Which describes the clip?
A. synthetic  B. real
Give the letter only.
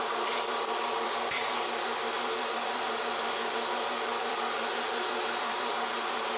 A